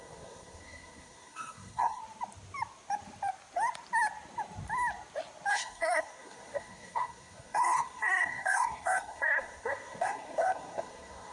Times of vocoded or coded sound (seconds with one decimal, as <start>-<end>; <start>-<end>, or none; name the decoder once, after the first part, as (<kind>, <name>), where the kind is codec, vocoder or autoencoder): 0.0-2.0 (codec, SNAC); 5.5-11.3